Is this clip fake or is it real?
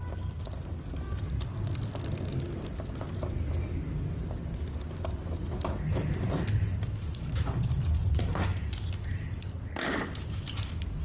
real